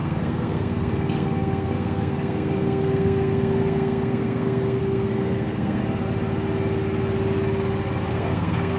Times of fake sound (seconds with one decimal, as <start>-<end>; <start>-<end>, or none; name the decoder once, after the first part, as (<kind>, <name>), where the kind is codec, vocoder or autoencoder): 0.0-5.8 (codec, SNAC); 8.1-8.8